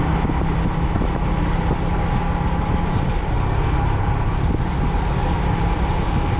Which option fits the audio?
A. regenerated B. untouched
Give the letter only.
B